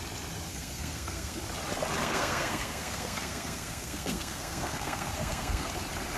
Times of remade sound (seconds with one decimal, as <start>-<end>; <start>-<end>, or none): 0.5-1.4; 2.0-5.7